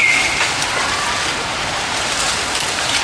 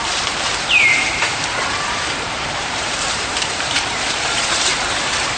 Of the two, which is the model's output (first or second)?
second